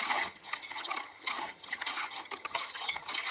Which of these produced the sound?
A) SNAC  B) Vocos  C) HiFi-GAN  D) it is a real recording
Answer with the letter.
C